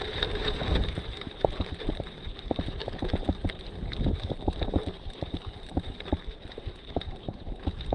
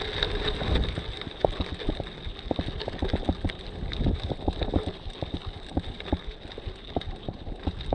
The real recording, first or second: second